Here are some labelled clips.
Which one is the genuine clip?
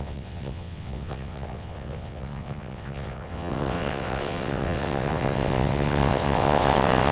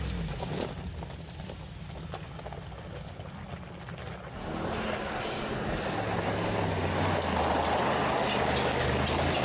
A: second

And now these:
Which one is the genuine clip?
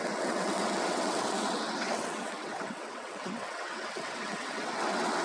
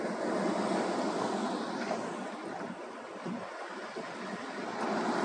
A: second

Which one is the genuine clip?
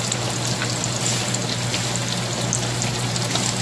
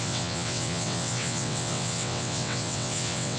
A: first